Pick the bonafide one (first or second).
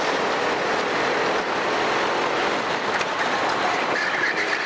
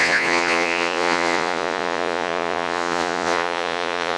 first